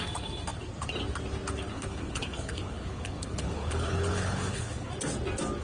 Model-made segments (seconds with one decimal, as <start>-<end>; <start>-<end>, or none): 1.7-4.9